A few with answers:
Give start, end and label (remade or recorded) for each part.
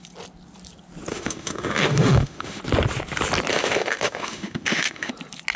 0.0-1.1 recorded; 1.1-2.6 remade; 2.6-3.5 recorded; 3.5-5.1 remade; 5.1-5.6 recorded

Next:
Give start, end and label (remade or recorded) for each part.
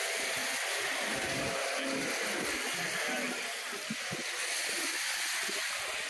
0.0-6.1 recorded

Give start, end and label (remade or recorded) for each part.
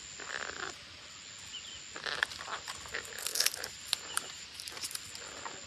0.0-3.3 recorded; 3.3-5.0 remade; 5.0-5.7 recorded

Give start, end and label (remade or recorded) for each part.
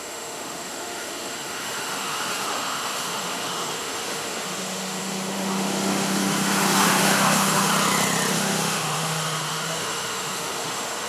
0.0-7.7 remade; 7.7-8.3 recorded; 8.3-11.1 remade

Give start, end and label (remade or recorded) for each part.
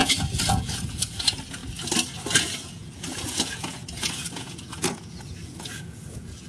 0.0-1.6 remade; 1.6-2.4 recorded; 2.4-6.5 remade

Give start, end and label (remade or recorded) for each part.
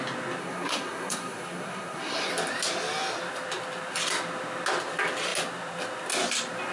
0.0-0.4 recorded; 0.4-2.3 remade; 2.3-6.7 recorded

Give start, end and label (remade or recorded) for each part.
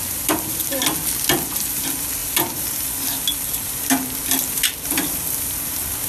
0.0-6.1 recorded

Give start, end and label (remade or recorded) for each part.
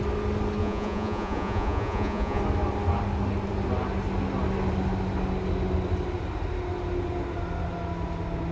0.0-0.6 recorded; 0.6-2.4 remade; 2.4-8.5 recorded